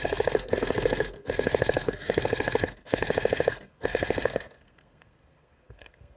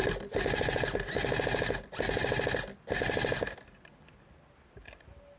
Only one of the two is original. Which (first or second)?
second